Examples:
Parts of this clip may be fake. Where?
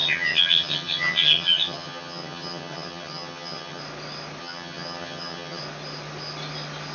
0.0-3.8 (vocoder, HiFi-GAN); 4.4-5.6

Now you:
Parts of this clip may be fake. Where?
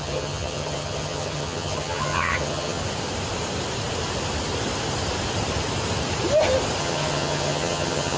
0.0-2.8 (vocoder, HiFi-GAN); 6.8-8.2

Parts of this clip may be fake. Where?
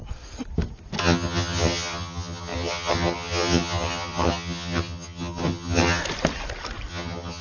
1.0-6.0 (vocoder, HiFi-GAN); 6.9-7.4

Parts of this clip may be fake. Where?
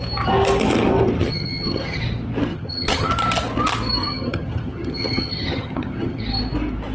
1.2-2.0 (vocoder, HiFi-GAN); 2.5-3.1; 4.0-6.2